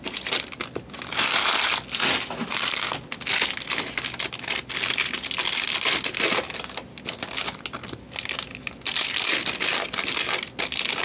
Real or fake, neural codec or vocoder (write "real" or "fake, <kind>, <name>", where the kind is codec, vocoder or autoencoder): real